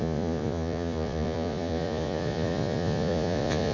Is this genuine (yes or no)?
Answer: no